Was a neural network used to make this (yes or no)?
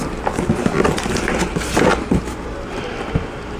no